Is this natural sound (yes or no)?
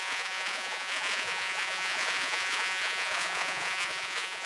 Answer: no